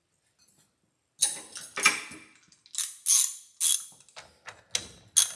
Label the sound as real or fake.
real